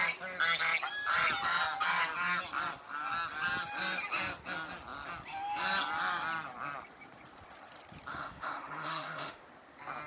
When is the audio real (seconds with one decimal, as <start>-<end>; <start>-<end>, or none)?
0.0-8.1; 9.4-10.1